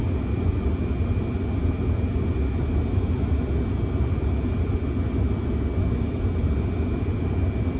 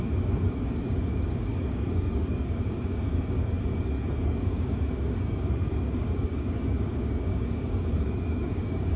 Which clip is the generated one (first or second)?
second